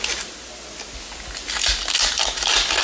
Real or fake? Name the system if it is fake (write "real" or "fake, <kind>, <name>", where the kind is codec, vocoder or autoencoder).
real